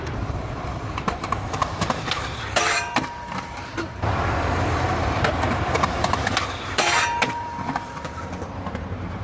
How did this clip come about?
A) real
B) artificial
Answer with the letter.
B